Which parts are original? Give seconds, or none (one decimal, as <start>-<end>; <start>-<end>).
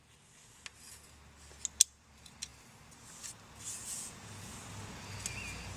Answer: 0.0-3.8; 4.6-5.8